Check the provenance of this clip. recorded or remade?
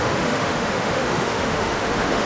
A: remade